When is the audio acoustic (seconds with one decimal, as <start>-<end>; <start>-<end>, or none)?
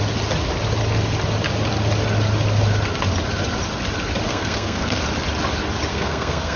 0.0-4.3; 5.0-5.9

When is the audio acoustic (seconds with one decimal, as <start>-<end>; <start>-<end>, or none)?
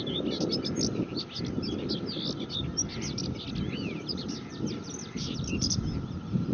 0.0-6.5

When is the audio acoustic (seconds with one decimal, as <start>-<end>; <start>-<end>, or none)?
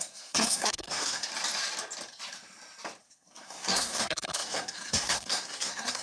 1.3-3.0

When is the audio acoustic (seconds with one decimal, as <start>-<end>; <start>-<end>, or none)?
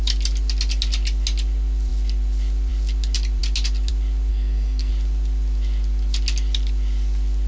0.0-4.3; 4.9-7.5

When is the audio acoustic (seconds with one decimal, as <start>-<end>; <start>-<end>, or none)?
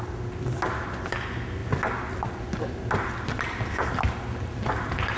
0.0-5.2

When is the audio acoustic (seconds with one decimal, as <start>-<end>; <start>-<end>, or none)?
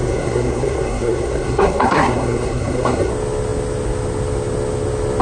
3.1-5.2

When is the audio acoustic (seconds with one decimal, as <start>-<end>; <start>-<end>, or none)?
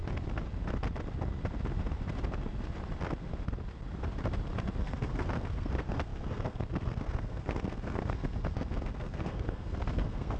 0.0-4.8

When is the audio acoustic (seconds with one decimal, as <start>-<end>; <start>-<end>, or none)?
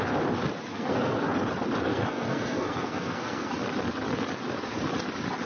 0.0-0.7; 1.3-1.9; 3.5-5.5